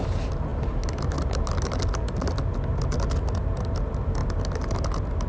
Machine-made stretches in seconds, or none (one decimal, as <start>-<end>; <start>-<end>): none